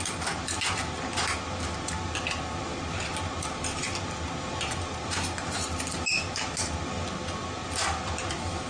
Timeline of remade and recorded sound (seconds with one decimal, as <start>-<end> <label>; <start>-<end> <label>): 0.0-8.7 recorded